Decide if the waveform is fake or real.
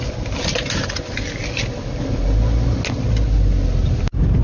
real